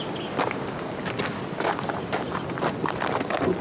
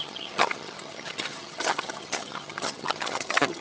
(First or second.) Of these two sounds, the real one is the first